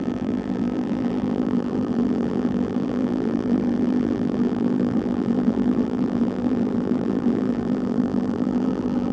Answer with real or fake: fake